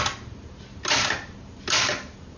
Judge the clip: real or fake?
real